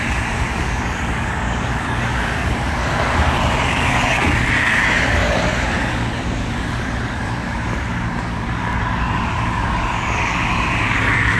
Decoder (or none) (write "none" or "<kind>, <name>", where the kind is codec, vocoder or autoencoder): codec, DAC